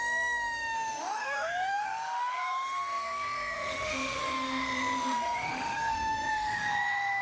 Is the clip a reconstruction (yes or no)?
yes